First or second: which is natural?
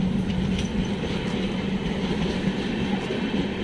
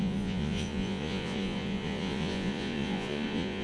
first